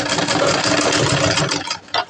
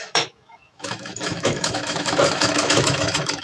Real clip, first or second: first